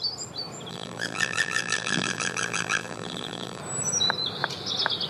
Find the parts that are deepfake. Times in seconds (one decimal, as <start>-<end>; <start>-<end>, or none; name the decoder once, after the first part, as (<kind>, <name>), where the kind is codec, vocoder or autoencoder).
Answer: 0.7-3.6 (vocoder, BigVGAN v2)